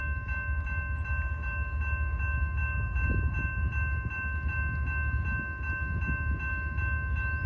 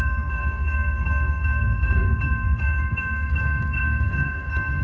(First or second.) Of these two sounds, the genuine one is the first